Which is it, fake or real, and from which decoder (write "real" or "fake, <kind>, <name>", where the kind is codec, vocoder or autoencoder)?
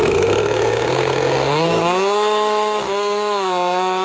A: fake, codec, SNAC